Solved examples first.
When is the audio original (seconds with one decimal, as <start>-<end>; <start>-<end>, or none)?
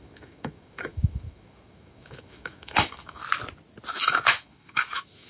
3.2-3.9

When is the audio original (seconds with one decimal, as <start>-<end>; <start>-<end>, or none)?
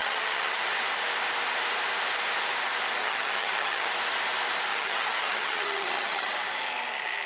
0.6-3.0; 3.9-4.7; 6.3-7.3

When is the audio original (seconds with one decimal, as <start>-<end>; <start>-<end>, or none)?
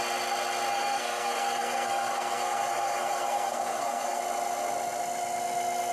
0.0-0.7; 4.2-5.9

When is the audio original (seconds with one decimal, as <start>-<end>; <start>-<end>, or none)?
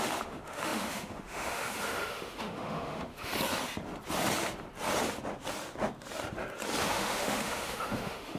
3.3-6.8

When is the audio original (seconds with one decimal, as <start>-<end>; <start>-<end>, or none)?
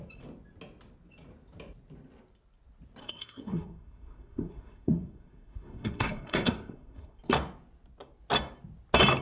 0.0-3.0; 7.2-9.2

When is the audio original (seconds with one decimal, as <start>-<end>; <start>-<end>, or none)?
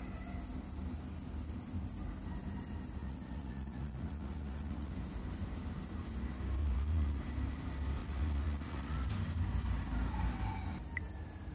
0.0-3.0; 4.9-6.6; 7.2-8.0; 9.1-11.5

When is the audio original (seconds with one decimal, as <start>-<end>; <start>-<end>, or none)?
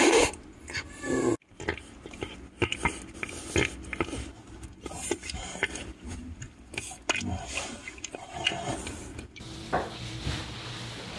0.0-9.6; 10.2-11.2